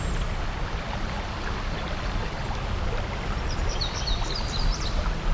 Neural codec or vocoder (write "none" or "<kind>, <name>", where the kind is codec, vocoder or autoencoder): none